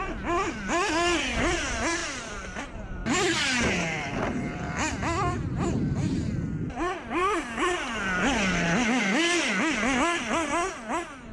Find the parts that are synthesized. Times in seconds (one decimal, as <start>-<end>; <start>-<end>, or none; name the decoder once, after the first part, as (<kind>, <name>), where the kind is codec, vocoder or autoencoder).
2.0-2.6 (vocoder, BigVGAN v2)